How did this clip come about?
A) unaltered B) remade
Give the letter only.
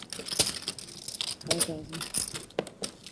A